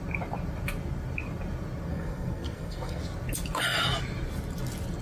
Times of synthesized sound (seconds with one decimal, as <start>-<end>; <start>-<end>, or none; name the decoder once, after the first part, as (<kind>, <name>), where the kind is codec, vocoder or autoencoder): 1.9-3.0 (codec, SNAC)